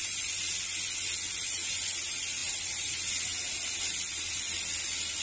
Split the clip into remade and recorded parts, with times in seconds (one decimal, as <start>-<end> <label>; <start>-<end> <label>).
0.0-2.4 recorded; 2.4-2.9 remade; 2.9-5.2 recorded